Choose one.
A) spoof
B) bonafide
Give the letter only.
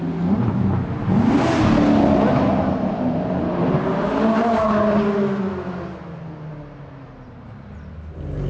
B